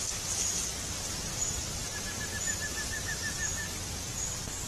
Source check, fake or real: real